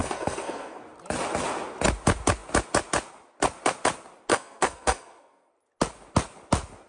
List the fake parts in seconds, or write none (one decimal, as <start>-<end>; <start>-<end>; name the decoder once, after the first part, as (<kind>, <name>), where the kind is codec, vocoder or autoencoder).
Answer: 0.0-0.8 (codec, SNAC); 4.3-5.5